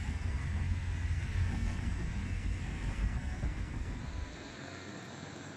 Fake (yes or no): yes